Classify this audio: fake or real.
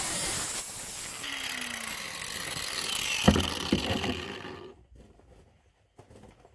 real